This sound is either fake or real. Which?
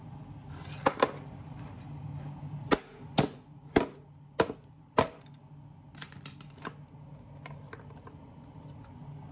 real